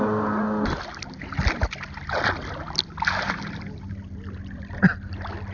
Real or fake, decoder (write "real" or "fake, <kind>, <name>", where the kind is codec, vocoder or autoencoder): real